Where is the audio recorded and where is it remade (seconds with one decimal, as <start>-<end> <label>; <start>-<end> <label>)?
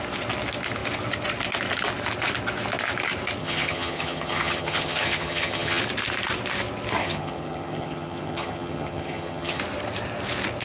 0.0-3.4 recorded; 3.4-5.8 remade; 5.8-7.0 recorded; 7.0-9.6 remade; 9.6-10.6 recorded